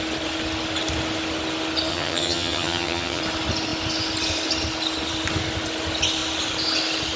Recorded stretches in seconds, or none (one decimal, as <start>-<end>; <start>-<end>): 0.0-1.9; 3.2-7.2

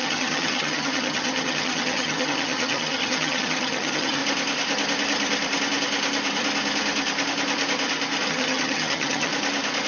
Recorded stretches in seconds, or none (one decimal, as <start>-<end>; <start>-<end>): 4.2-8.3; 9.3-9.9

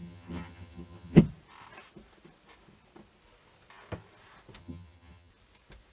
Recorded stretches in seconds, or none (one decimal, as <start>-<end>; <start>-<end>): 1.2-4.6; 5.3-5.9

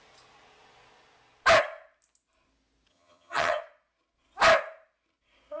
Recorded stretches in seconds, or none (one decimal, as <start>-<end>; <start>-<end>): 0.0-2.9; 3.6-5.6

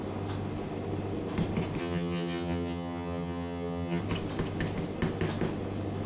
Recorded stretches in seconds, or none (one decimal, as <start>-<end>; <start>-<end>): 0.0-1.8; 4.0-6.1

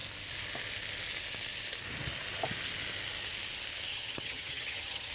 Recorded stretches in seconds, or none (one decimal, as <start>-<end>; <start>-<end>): 0.0-3.9

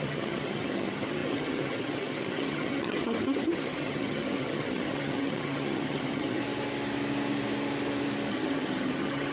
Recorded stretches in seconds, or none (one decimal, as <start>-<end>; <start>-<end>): 6.4-8.3